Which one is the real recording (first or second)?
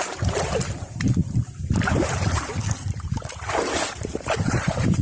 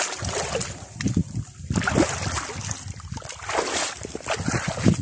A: second